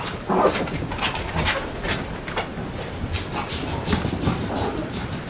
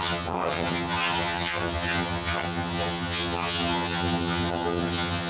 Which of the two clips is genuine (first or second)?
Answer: first